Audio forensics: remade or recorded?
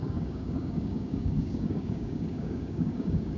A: remade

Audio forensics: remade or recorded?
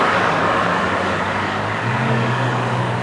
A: remade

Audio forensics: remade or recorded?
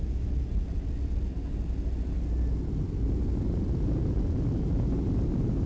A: recorded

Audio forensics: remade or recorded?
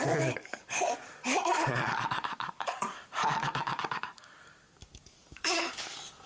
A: remade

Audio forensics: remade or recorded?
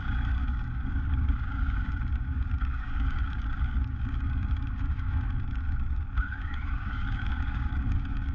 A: remade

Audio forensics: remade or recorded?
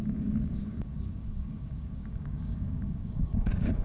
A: remade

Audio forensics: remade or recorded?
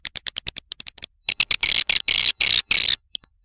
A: recorded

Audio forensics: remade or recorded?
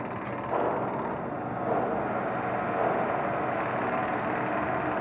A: recorded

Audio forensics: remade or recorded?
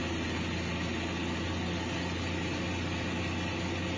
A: recorded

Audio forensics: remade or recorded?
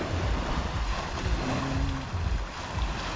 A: recorded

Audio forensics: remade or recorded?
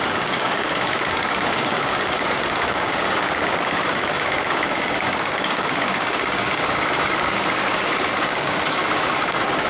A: remade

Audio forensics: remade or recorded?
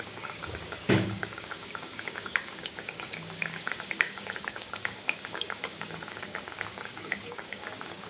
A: remade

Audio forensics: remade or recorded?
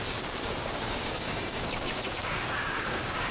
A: remade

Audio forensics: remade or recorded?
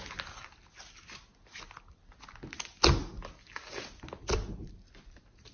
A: recorded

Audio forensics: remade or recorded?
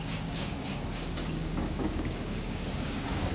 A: remade